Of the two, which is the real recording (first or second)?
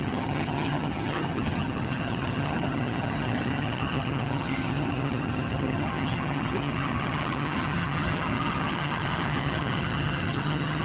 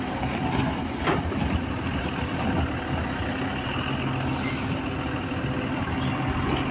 second